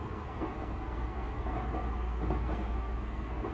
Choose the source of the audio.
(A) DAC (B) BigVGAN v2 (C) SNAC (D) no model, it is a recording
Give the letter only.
C